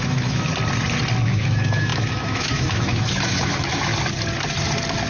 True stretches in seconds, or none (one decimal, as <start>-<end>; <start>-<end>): 0.5-1.2; 3.9-5.1